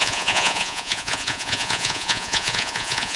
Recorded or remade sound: remade